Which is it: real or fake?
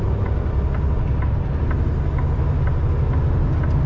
real